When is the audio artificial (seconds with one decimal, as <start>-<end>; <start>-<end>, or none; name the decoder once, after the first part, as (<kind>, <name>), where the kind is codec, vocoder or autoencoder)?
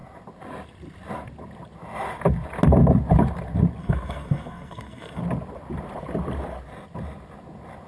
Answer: 3.8-5.2 (codec, SNAC)